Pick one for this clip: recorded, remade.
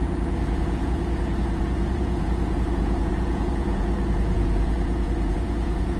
remade